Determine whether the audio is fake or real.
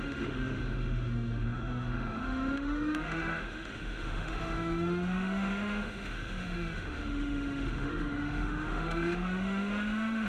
fake